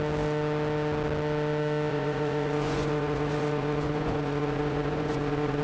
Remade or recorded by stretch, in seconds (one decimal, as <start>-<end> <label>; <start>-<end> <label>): 0.0-1.9 recorded; 1.9-5.6 remade